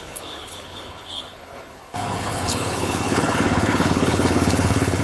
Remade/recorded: remade